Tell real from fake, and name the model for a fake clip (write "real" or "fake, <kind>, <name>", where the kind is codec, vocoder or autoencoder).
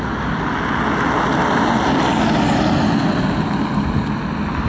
real